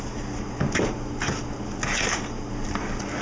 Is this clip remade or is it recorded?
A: recorded